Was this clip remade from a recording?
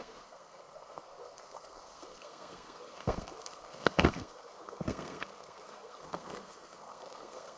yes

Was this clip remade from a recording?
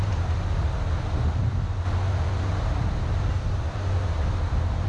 no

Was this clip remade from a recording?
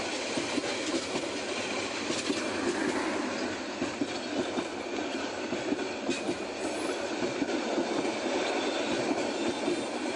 no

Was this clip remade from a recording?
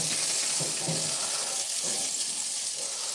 no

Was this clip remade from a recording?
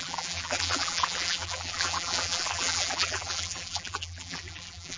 yes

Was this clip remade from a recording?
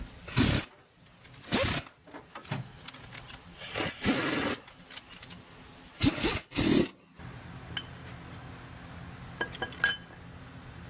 no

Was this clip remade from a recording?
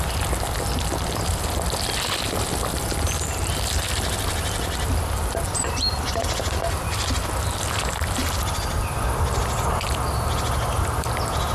no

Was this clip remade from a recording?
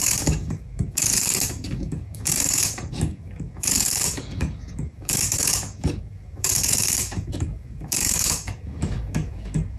yes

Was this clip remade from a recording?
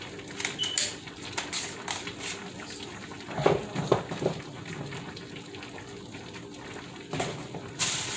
no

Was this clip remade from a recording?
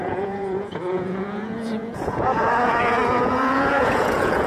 yes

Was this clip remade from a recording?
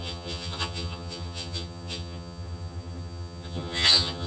yes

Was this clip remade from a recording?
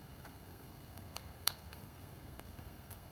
yes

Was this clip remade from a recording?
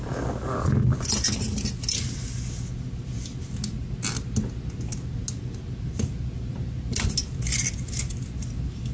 no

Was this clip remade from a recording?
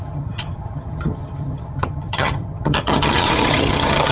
yes